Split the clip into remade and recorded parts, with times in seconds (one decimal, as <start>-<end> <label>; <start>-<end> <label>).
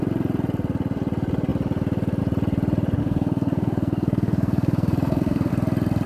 0.0-3.0 recorded; 3.0-5.5 remade; 5.5-6.1 recorded